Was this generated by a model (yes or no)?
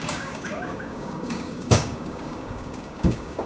yes